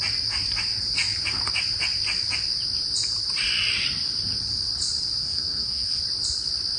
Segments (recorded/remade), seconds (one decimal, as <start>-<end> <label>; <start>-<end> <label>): 0.0-5.2 recorded; 5.2-6.0 remade; 6.0-6.8 recorded